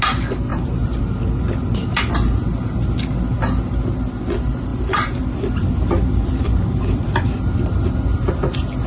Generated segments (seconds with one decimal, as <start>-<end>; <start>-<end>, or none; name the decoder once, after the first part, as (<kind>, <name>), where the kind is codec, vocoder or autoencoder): 0.5-1.0 (vocoder, BigVGAN v2); 4.7-7.3